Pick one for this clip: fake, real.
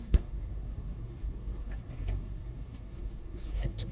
fake